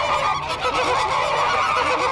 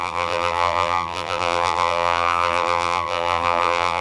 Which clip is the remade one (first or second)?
second